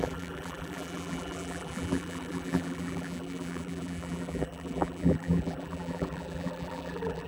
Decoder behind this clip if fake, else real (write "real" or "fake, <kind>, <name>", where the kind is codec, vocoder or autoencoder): fake, vocoder, BigVGAN v2